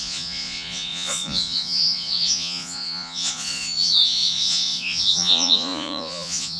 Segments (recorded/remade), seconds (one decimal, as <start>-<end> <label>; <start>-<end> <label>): 0.0-6.6 remade